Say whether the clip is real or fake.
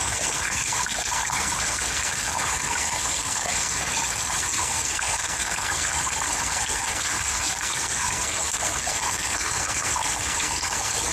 fake